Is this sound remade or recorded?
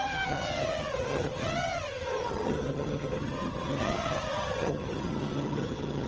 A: remade